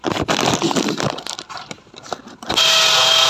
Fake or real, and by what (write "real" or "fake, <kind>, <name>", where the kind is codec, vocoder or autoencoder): real